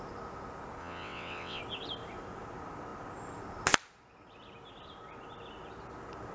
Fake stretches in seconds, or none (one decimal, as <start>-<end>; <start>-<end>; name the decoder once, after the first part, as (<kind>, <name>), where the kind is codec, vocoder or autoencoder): 0.8-1.6 (vocoder, WaveNeXt)